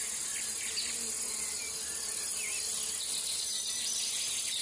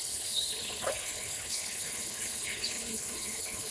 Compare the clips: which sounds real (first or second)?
first